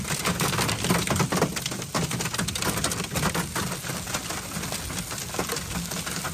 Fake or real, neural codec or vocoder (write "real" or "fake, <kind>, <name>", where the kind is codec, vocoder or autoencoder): real